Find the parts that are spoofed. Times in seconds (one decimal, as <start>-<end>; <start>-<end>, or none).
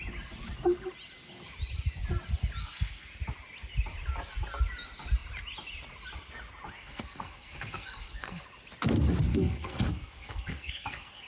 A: 2.6-3.1; 6.8-8.4; 9.3-11.3